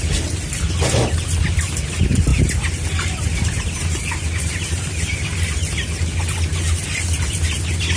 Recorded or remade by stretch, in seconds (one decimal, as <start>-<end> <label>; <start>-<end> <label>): 0.0-8.0 recorded